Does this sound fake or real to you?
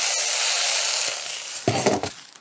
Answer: real